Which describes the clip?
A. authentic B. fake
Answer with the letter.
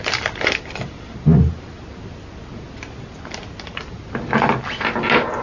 A